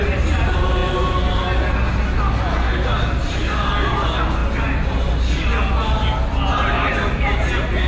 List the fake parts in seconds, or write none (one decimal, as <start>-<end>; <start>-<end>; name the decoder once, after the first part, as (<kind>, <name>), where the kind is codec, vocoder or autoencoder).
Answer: none